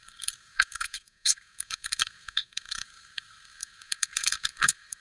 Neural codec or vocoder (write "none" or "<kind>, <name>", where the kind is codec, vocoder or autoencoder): codec, SNAC